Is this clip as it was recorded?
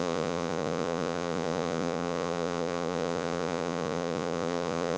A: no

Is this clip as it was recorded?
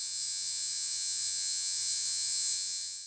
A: no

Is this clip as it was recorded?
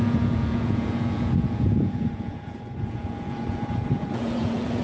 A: no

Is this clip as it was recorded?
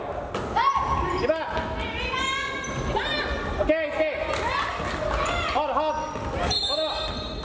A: yes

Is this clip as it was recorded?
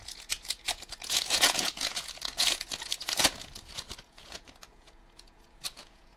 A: no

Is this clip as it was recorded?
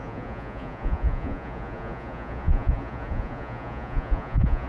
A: no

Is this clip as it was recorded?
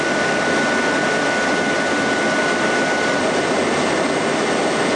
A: yes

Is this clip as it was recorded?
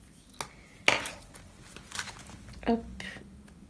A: yes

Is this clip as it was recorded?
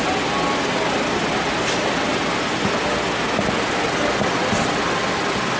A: yes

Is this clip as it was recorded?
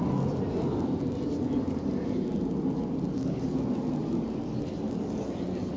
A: yes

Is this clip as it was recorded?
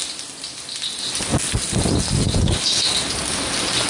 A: yes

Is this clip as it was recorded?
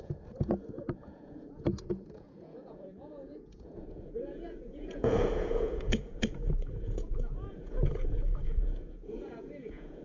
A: no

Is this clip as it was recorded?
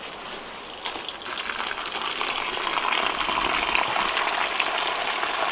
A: yes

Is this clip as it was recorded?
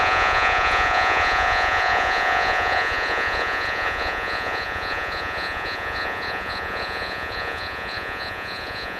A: no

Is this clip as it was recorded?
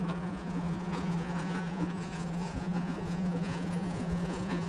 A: no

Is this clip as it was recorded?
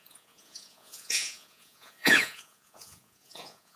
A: no